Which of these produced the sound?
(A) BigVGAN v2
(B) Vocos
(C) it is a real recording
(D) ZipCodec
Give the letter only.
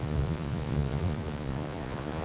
B